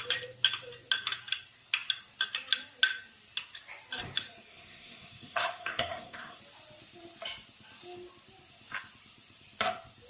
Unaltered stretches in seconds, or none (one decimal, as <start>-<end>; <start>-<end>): 0.0-4.5; 6.4-10.1